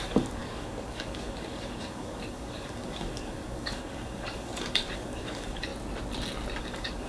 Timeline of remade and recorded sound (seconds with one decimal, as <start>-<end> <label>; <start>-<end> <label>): 0.0-5.7 remade; 5.7-6.6 recorded; 6.6-7.1 remade